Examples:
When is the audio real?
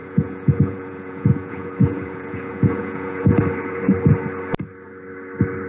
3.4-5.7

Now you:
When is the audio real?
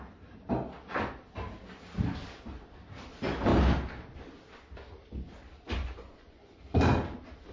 0.0-5.8; 6.6-7.5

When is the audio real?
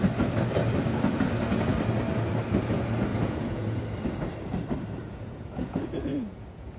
0.0-3.1; 3.8-5.0